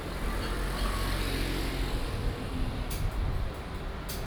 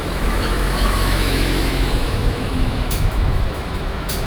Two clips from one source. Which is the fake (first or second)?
second